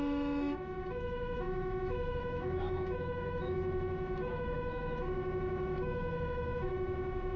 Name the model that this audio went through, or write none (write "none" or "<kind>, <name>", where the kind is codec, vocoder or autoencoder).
autoencoder, DAC-VAE